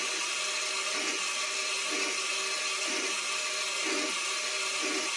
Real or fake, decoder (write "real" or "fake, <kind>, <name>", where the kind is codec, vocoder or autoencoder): real